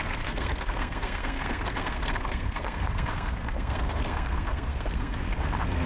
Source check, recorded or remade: remade